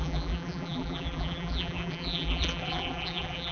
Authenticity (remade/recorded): remade